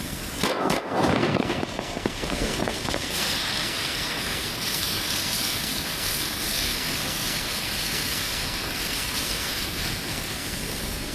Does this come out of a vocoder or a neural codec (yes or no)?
yes